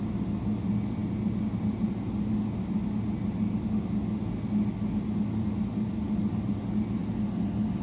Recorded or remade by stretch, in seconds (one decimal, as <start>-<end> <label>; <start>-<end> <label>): 0.0-7.8 recorded